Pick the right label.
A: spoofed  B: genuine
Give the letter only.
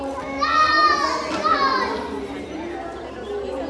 B